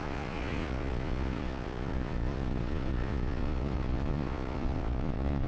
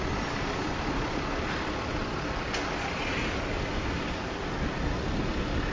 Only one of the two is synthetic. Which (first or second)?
first